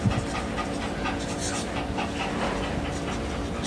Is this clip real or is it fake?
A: real